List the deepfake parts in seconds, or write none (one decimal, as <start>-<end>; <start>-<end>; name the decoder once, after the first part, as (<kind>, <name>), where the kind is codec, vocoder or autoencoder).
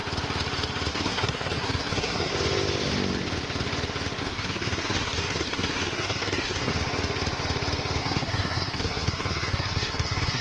0.9-2.3 (codec, SNAC); 4.2-6.7; 8.0-10.4